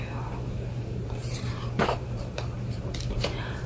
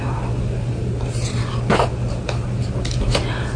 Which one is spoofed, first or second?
first